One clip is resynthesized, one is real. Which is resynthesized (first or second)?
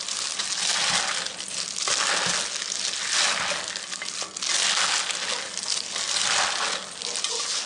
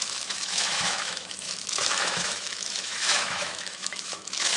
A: second